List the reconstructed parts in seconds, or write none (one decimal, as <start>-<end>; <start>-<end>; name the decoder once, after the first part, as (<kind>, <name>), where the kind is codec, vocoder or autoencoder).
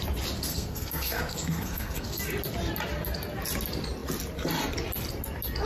0.5-2.2 (codec, SNAC)